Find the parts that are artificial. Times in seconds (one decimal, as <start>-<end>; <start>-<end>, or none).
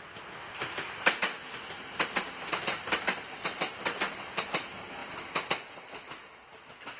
none